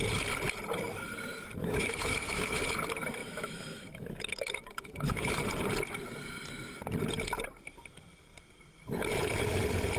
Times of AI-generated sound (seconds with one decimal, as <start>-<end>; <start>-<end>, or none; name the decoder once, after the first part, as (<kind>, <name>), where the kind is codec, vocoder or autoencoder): 1.6-2.6 (autoencoder, DAC-VAE); 3.2-5.3